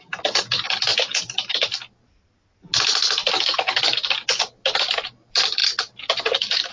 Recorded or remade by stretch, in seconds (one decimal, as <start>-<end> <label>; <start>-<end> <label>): 0.0-6.7 recorded

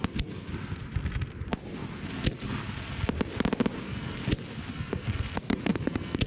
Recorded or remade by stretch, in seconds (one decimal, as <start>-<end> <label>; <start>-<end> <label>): 0.0-0.5 remade; 0.5-3.8 recorded; 3.8-4.2 remade; 4.2-4.7 recorded; 4.7-6.3 remade

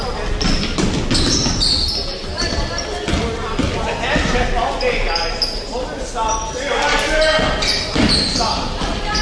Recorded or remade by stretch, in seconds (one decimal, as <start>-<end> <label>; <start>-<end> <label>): 0.0-9.2 recorded

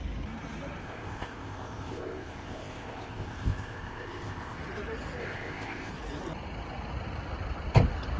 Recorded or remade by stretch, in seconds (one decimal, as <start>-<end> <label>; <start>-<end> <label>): 0.0-0.8 recorded; 0.8-4.6 remade; 4.6-5.2 recorded; 5.2-5.9 remade; 5.9-8.2 recorded

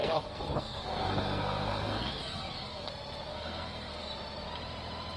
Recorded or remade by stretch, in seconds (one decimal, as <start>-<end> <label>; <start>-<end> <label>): 0.0-2.9 remade; 2.9-3.3 recorded; 3.3-4.0 remade; 4.0-5.2 recorded

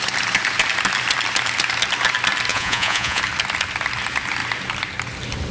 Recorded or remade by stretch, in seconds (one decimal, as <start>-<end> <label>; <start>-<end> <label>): 0.0-2.5 recorded; 2.5-3.2 remade; 3.2-5.5 recorded